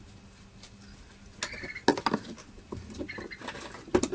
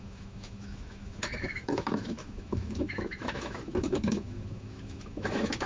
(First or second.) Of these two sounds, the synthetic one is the second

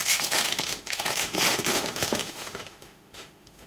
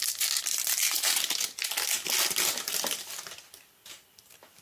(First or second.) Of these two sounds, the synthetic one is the first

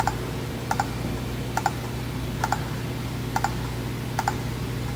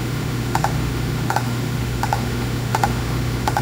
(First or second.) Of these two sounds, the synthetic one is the second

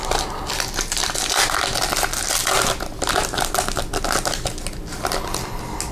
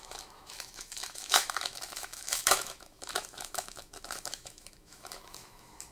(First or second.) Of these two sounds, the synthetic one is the second